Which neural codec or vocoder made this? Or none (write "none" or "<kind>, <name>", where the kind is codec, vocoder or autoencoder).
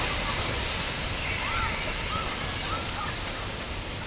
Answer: none